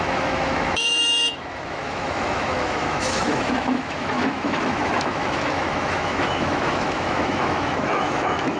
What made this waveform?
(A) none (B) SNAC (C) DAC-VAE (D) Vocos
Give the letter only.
C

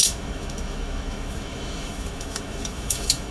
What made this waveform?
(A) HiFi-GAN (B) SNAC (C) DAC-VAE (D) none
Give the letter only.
C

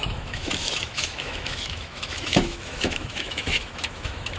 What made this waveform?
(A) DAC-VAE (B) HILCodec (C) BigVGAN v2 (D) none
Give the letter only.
A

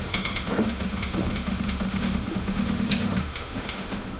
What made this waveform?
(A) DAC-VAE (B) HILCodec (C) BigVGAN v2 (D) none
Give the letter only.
A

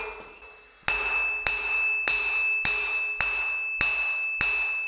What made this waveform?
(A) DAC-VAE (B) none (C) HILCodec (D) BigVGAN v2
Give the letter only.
B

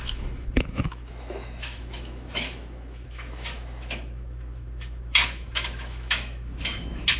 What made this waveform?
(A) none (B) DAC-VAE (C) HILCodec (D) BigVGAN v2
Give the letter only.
B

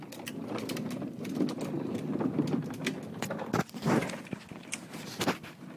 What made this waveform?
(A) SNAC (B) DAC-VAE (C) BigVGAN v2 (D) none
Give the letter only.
D